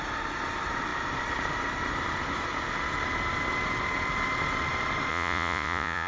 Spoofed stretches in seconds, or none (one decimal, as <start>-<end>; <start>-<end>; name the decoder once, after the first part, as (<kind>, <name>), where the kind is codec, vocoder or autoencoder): 5.1-6.1 (vocoder, Vocos)